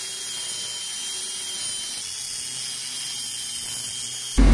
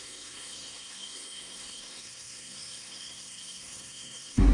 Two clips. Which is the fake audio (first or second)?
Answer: second